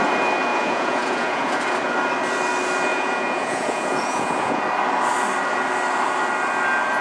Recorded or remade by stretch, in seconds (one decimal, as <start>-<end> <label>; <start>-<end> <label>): 0.0-0.5 recorded; 0.5-1.6 remade; 1.6-2.9 recorded; 2.9-4.6 remade; 4.6-7.0 recorded